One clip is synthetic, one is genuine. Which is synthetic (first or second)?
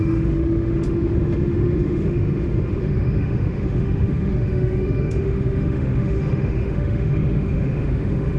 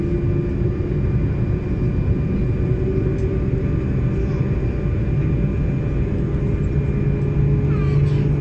first